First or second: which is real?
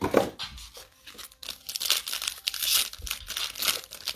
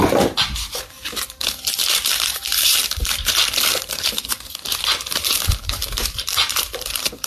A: first